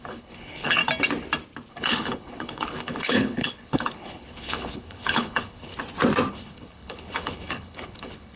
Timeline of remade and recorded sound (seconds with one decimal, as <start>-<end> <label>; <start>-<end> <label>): 0.0-0.8 remade; 0.8-1.7 recorded; 1.7-5.7 remade; 5.7-6.3 recorded; 6.3-8.4 remade